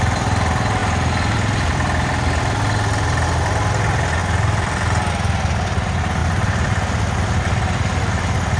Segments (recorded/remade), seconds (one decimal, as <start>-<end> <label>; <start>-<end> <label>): 0.0-0.8 recorded; 0.8-2.4 remade; 2.4-4.2 recorded; 4.2-5.1 remade; 5.1-6.2 recorded; 6.2-7.0 remade; 7.0-8.6 recorded